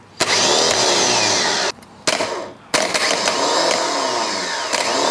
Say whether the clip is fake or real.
real